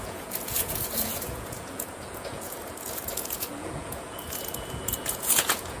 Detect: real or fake fake